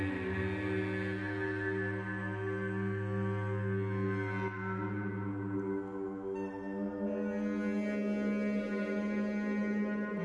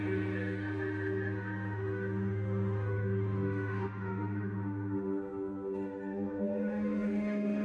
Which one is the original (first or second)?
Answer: first